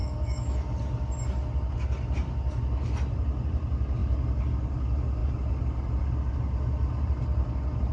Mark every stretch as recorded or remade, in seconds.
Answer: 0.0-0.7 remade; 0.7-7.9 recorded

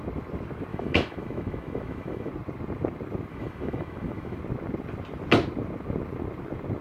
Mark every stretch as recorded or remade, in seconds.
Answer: 0.0-0.7 recorded; 0.7-2.3 remade; 2.3-3.3 recorded; 3.3-4.4 remade; 4.4-6.8 recorded

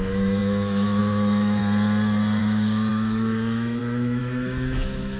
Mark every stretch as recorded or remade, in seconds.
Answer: 0.0-1.6 remade; 1.6-2.4 recorded; 2.4-5.2 remade

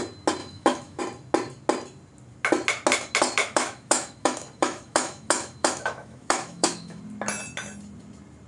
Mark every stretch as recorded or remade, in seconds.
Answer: 0.0-0.4 recorded; 0.4-1.0 remade; 1.0-3.4 recorded; 3.4-7.0 remade; 7.0-8.5 recorded

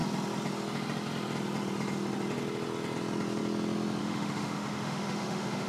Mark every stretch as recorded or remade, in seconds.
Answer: 0.0-4.0 recorded; 4.0-5.7 remade